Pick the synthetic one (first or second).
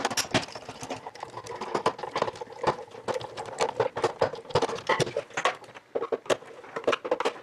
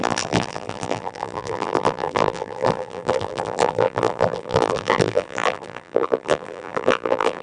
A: second